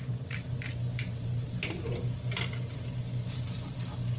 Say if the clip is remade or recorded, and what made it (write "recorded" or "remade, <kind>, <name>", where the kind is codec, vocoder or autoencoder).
recorded